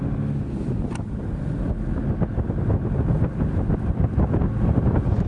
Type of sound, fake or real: real